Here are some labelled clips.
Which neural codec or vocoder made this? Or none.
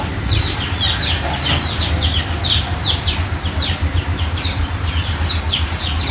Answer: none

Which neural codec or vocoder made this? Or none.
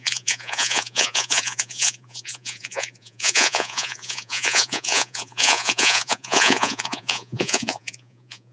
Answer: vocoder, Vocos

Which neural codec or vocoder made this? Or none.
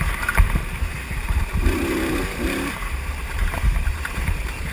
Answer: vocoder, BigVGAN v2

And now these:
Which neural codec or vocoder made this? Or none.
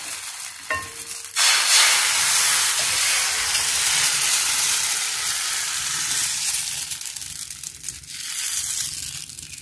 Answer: none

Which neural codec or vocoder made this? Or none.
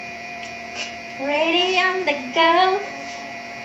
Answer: vocoder, Vocos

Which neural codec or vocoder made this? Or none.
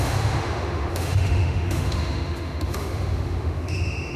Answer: autoencoder, DAC-VAE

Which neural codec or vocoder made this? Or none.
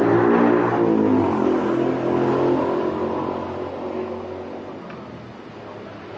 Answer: none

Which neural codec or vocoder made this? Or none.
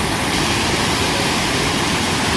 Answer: none